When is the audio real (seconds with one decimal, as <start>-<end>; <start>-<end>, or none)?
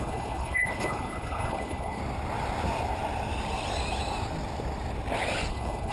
2.0-5.5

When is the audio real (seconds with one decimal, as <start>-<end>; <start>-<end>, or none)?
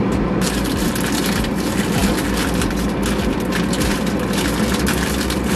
0.0-5.6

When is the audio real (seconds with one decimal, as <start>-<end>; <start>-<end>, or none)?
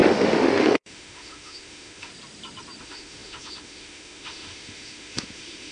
2.1-2.8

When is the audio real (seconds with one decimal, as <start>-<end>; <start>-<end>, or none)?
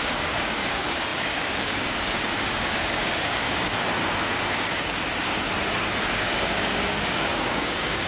4.0-4.5; 5.0-6.1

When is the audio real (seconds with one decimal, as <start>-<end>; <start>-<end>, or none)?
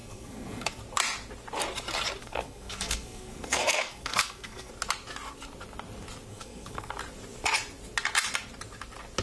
0.8-2.2; 4.7-6.3; 6.9-9.2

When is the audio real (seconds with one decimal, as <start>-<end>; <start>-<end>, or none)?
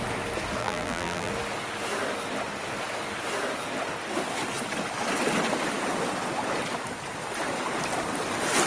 0.0-0.6; 1.3-8.7